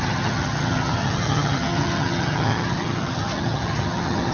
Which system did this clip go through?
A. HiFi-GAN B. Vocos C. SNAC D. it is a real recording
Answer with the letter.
A